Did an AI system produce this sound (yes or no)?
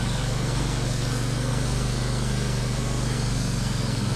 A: yes